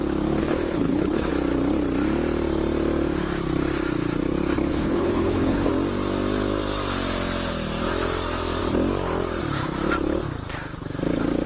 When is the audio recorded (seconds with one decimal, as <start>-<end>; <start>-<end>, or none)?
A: 0.0-0.4; 1.3-4.7; 5.7-11.5